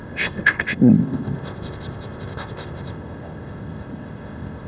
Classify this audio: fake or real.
fake